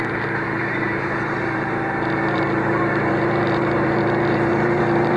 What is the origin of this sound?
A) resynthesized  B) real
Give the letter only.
A